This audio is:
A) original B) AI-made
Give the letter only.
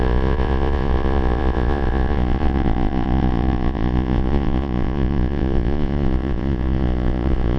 B